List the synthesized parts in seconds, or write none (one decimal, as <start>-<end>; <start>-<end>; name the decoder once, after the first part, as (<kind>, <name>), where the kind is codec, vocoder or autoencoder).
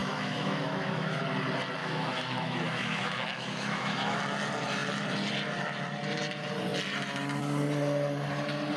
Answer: 0.0-1.2 (autoencoder, DAC-VAE); 1.8-4.2